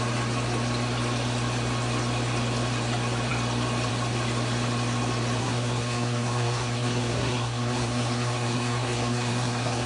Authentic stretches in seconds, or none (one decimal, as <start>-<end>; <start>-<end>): 0.0-5.4